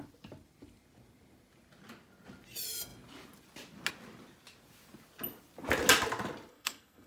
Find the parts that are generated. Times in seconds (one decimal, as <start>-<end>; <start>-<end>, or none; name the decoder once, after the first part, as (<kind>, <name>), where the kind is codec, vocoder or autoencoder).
6.5-7.1 (codec, SNAC)